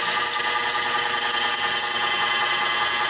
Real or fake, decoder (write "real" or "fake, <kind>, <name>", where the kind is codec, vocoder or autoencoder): real